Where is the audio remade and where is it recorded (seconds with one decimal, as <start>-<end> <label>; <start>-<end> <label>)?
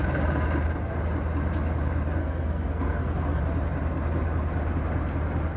0.0-2.2 recorded; 2.2-3.4 remade; 3.4-5.6 recorded